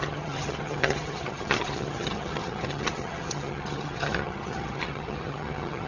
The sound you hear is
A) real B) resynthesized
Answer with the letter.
B